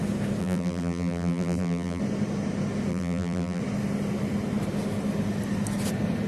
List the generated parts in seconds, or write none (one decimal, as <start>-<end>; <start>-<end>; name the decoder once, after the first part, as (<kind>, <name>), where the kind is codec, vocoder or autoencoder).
0.4-2.0 (vocoder, BigVGAN v2); 2.9-3.6